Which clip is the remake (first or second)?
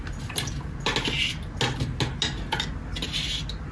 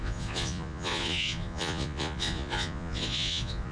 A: second